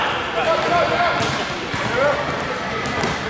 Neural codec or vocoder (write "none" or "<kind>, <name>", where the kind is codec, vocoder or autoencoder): none